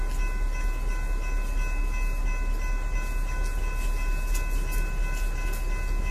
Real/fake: real